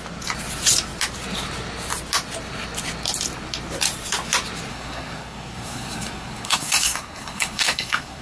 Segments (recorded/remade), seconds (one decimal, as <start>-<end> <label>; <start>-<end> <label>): 0.0-4.7 recorded; 4.7-8.2 remade